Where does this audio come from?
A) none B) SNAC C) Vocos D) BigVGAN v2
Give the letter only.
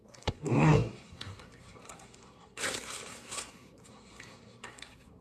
B